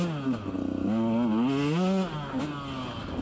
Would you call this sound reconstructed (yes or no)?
no